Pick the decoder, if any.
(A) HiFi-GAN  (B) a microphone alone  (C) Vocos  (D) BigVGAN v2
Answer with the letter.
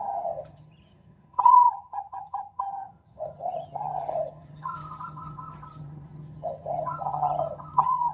A